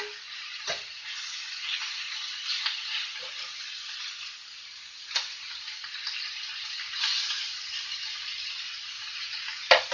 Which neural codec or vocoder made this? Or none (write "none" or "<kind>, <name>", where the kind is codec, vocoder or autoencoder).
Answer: none